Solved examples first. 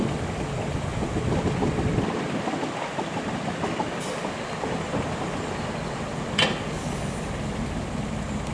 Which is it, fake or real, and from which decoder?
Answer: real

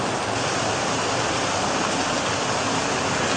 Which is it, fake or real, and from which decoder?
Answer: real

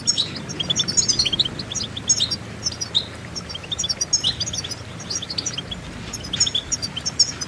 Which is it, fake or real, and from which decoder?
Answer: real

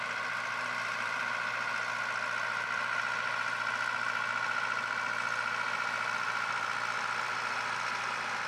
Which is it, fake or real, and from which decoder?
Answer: real